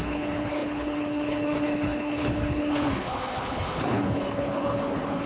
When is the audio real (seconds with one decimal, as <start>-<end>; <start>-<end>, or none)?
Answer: none